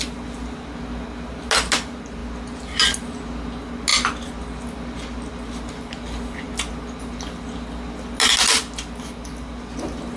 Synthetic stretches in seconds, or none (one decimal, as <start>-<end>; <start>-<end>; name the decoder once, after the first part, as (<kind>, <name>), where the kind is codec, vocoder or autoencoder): none